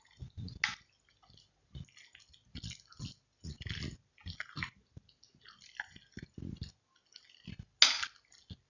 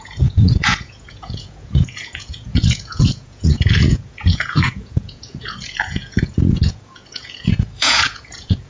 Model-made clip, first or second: second